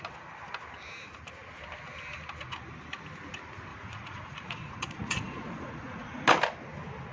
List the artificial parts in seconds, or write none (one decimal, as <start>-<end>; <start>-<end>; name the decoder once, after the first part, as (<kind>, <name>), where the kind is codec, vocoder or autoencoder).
3.7-6.1 (vocoder, Vocos)